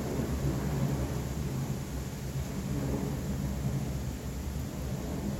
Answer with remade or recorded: recorded